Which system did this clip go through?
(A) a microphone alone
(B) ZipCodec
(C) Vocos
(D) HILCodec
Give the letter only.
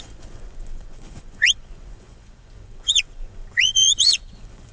C